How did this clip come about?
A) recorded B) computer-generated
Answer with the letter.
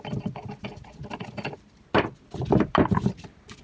A